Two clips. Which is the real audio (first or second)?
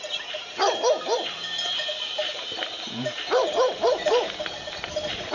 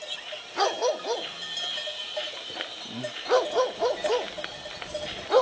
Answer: second